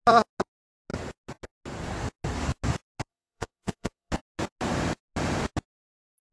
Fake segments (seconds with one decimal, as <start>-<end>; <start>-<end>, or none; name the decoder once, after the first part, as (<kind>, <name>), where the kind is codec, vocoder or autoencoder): 3.1-4.1 (vocoder, WaveNeXt)